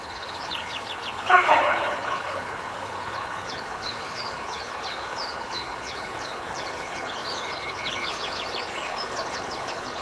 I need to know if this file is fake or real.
fake